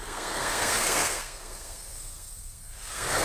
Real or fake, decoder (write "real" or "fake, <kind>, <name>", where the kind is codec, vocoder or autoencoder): fake, codec, SNAC